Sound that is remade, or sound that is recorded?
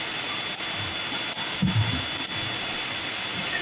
recorded